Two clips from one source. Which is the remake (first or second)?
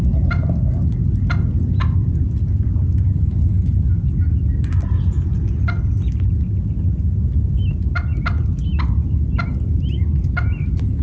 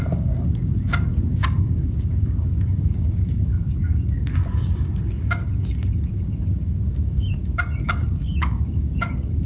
second